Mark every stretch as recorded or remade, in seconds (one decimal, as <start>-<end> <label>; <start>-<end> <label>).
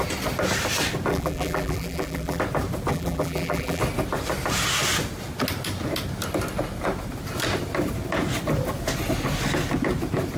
0.0-1.1 recorded; 1.1-2.4 remade; 2.4-2.9 recorded; 2.9-3.8 remade; 3.8-10.4 recorded